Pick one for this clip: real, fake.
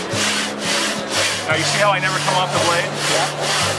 real